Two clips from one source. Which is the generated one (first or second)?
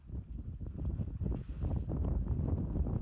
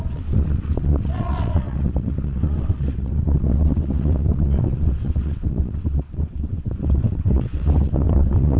second